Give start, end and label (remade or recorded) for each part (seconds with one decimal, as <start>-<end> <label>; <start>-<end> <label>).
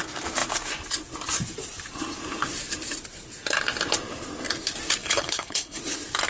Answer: 0.0-5.0 recorded; 5.0-5.8 remade; 5.8-6.3 recorded